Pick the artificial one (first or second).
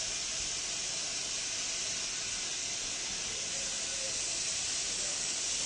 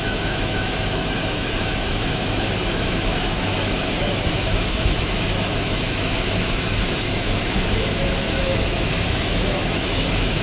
second